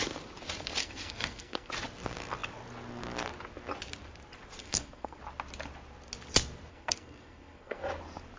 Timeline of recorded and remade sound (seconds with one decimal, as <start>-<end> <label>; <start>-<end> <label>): 0.0-0.8 recorded; 0.8-1.7 remade; 1.7-4.6 recorded; 4.6-5.2 remade; 5.2-6.7 recorded; 6.7-7.8 remade; 7.8-8.4 recorded